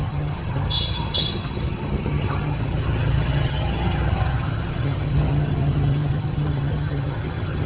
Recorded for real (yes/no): no